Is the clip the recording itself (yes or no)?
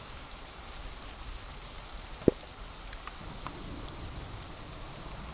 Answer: yes